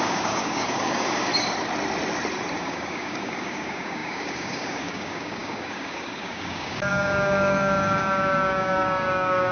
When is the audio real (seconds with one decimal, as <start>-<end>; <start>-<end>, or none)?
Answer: 1.3-2.5